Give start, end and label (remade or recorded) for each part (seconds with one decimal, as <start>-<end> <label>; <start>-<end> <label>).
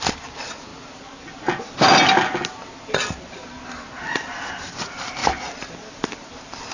0.0-6.7 recorded